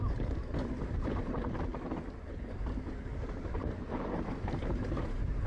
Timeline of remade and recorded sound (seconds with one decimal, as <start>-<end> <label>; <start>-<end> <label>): 0.0-1.7 remade; 1.7-2.3 recorded; 2.3-5.5 remade